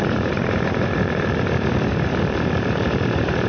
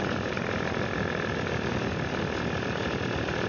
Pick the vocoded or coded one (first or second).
first